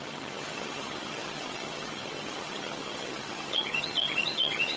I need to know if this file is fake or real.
fake